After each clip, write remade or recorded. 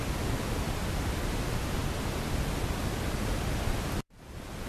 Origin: recorded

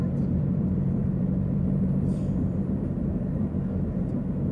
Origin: remade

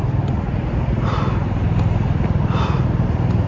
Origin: recorded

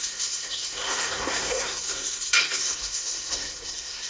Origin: remade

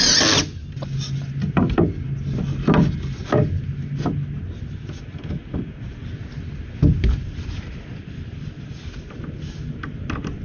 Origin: recorded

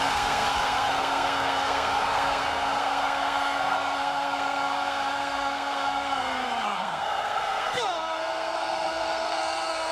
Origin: remade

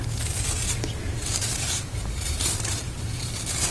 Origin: remade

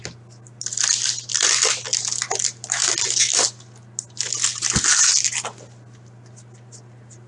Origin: recorded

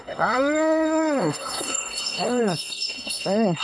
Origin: remade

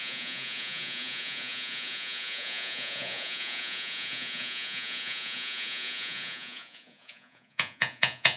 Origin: remade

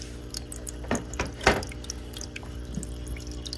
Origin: recorded